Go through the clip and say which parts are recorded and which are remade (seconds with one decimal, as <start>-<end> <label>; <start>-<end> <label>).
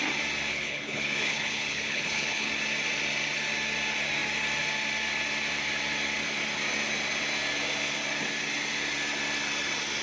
0.0-0.5 recorded; 0.5-2.5 remade; 2.5-10.0 recorded